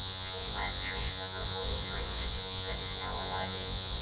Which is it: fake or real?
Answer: fake